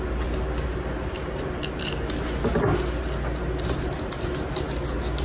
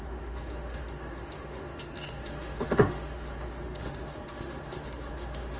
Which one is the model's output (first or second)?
second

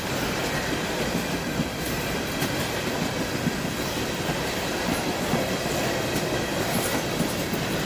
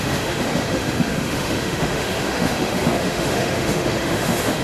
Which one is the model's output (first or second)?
second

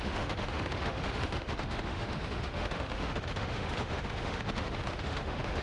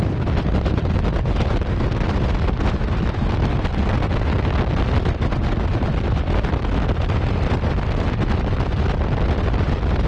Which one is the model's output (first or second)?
first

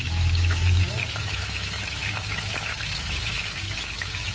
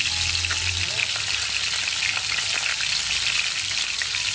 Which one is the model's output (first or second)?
first